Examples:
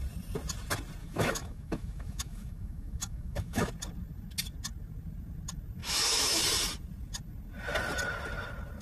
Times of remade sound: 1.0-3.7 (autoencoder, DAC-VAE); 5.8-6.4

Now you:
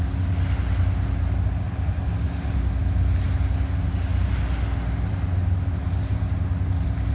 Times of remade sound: none

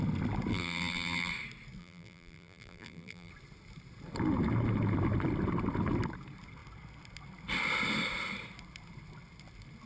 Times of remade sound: 0.5-1.3 (vocoder, BigVGAN v2); 1.8-3.3